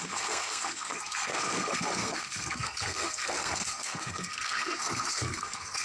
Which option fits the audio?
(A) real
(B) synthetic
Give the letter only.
B